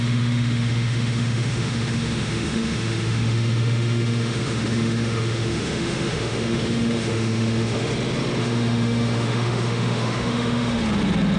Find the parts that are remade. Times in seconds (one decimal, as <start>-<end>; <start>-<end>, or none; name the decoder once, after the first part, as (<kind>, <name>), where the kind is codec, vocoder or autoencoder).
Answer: 0.0-7.9 (autoencoder, DAC-VAE); 8.4-10.8